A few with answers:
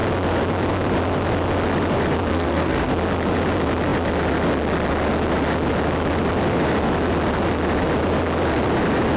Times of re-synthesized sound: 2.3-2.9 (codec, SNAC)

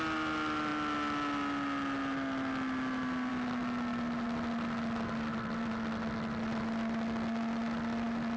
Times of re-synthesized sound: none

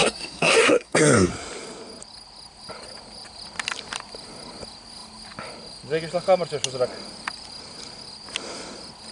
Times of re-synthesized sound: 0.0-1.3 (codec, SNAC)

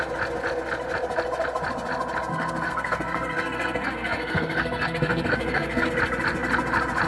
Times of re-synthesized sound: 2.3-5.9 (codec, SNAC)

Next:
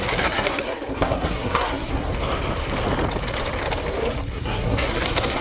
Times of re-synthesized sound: 0.0-2.1 (codec, SNAC); 4.3-5.4